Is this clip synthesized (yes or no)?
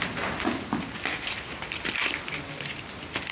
no